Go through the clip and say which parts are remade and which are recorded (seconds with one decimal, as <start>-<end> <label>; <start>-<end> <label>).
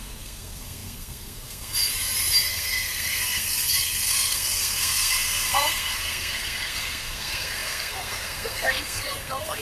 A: 0.0-1.9 remade; 1.9-2.5 recorded; 2.5-9.6 remade